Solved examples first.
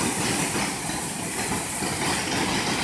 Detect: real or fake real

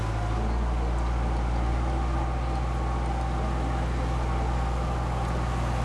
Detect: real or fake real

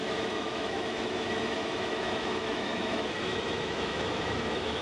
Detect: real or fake fake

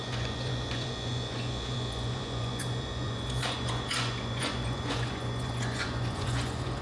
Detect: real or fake fake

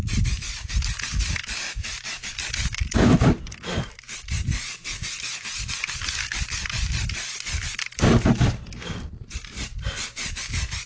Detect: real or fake real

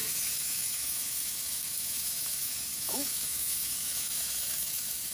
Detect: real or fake fake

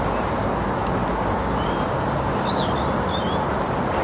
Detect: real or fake real